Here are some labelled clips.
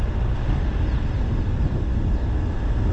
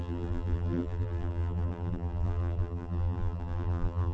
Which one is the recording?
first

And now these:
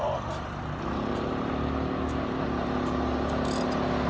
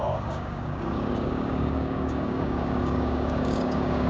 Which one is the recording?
first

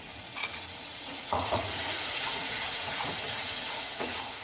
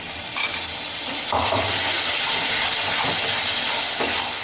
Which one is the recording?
second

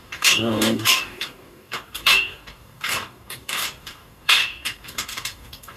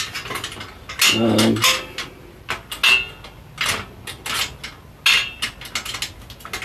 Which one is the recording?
second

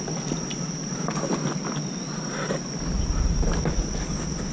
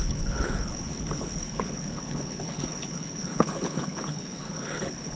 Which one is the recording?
first